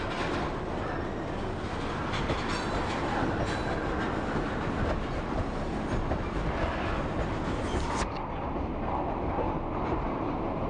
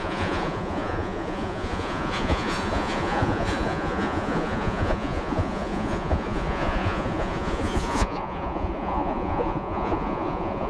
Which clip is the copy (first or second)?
second